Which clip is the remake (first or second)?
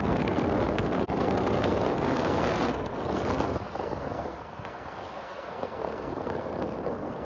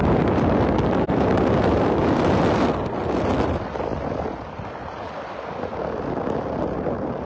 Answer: first